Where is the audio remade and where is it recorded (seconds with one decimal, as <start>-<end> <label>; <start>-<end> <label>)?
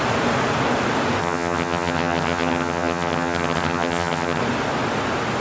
0.0-1.2 recorded; 1.2-4.4 remade; 4.4-5.4 recorded